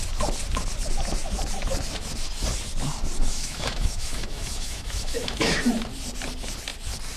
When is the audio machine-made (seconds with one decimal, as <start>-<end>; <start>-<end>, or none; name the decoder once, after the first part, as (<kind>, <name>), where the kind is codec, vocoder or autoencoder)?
3.2-5.6 (autoencoder, DAC-VAE)